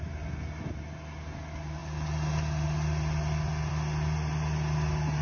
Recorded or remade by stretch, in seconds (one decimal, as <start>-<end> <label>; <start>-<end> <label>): 0.0-5.2 recorded